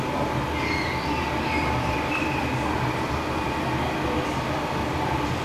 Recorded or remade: recorded